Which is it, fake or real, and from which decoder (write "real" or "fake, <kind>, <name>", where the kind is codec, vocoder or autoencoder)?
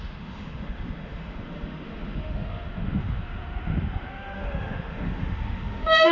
fake, autoencoder, DAC-VAE